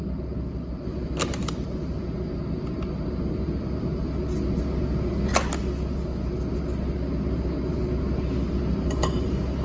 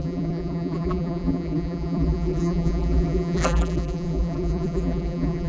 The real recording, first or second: first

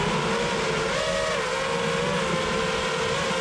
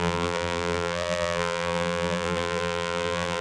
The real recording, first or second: first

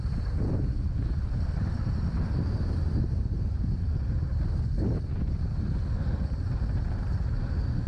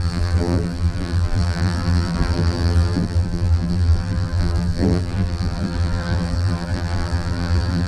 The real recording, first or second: first